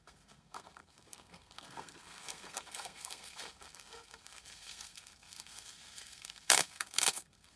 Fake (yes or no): yes